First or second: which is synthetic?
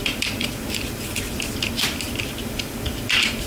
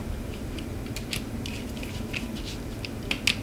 first